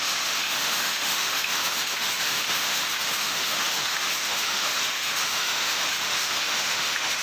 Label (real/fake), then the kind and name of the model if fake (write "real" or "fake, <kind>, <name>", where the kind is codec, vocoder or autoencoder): fake, autoencoder, DAC-VAE